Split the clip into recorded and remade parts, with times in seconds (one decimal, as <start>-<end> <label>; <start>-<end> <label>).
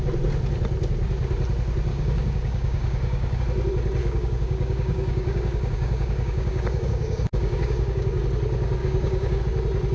0.0-1.9 recorded; 1.9-3.4 remade; 3.4-4.0 recorded; 4.0-8.2 remade; 8.2-8.8 recorded; 8.8-9.4 remade; 9.4-9.9 recorded